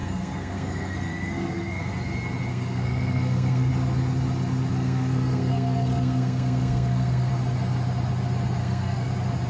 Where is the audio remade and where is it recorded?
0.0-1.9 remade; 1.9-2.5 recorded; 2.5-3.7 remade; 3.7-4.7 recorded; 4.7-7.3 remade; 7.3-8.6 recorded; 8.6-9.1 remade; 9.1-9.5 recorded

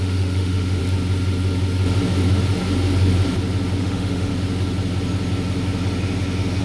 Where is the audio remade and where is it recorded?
0.0-0.8 remade; 0.8-3.8 recorded; 3.8-4.3 remade; 4.3-6.6 recorded

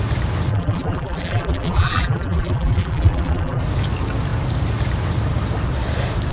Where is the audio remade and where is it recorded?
0.0-0.5 recorded; 0.5-3.6 remade; 3.6-6.3 recorded

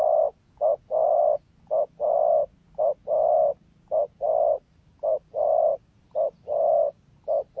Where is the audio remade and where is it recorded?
0.0-7.6 recorded